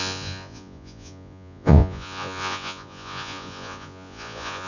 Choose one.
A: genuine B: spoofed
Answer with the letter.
B